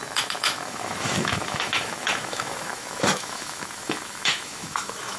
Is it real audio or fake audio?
fake